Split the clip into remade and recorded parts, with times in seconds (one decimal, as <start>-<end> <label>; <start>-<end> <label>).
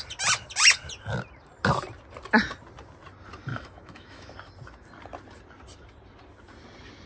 0.0-3.5 recorded; 3.5-4.3 remade; 4.3-7.1 recorded